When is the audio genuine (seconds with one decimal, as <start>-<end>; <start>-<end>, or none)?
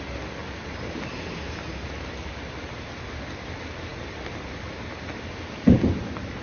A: 0.0-6.4